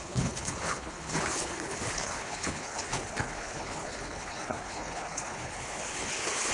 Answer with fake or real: fake